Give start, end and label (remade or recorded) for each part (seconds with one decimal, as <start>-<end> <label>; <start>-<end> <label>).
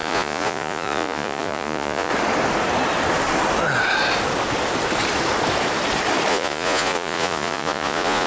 0.0-2.1 remade; 2.1-6.3 recorded; 6.3-8.3 remade